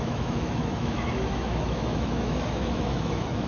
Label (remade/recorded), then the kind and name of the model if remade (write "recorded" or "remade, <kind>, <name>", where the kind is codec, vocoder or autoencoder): remade, autoencoder, DAC-VAE